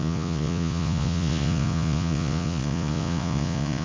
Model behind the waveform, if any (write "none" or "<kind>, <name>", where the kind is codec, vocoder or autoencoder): vocoder, Vocos